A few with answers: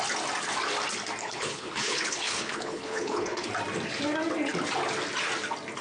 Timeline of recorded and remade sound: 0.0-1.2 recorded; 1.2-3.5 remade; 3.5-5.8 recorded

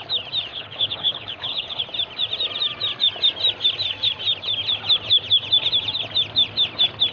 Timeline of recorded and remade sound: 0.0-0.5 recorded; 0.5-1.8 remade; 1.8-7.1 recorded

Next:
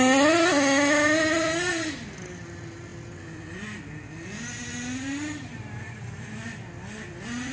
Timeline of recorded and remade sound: 0.0-7.5 recorded

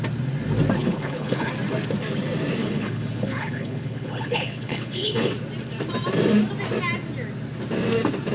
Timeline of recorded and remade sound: 0.0-0.8 recorded; 0.8-1.5 remade; 1.5-2.6 recorded; 2.6-5.3 remade; 5.3-8.3 recorded